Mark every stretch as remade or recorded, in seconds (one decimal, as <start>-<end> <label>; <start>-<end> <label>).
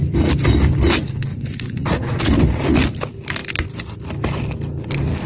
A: 0.0-1.3 recorded; 1.3-2.2 remade; 2.2-5.3 recorded